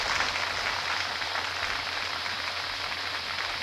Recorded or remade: recorded